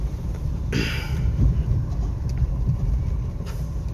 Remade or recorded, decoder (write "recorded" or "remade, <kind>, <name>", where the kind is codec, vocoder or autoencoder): recorded